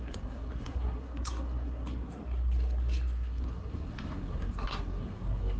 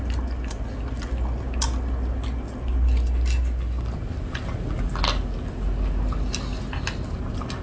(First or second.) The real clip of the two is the second